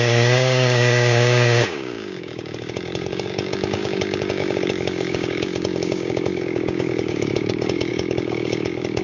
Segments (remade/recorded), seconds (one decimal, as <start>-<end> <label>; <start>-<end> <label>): 0.0-9.0 remade